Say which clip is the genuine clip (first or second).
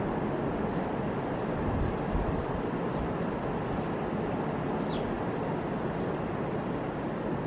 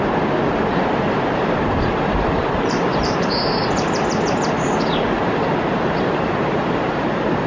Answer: first